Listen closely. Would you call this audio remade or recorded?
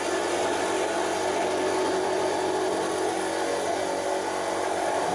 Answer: recorded